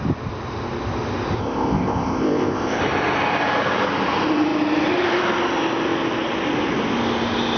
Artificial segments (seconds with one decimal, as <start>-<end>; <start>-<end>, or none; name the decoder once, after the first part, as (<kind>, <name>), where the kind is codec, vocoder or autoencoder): 1.4-2.8 (codec, ZipCodec)